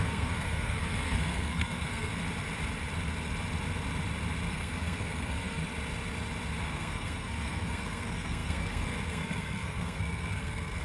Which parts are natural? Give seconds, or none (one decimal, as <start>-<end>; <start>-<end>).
2.1-4.5; 5.6-6.6

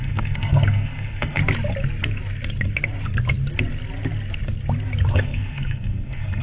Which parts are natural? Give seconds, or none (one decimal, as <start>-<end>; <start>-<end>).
1.4-5.1

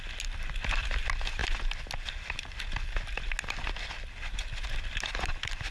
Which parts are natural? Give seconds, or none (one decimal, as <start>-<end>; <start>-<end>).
0.0-5.7